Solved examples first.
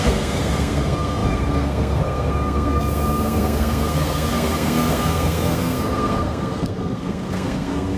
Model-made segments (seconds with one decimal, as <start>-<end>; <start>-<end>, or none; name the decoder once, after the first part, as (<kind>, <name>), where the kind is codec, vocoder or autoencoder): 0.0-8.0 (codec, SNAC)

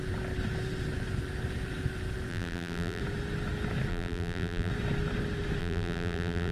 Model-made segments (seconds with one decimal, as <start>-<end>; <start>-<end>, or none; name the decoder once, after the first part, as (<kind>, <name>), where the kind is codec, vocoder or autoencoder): 2.3-3.0 (vocoder, BigVGAN v2); 3.9-4.7; 5.6-6.5

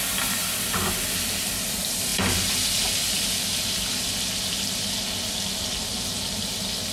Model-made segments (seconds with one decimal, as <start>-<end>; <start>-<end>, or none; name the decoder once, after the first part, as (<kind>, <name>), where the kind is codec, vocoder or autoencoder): none

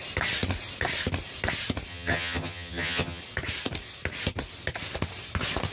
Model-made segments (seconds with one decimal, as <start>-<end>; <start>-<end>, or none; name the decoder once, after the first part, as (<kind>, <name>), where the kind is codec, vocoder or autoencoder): 1.9-3.2 (vocoder, HiFi-GAN)

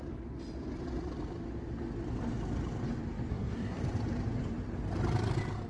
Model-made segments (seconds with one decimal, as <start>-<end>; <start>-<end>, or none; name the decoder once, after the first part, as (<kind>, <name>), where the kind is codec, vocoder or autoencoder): 3.3-3.8 (codec, SNAC)